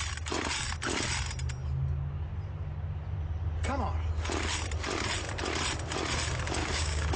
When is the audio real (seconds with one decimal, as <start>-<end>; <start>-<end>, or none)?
0.0-6.6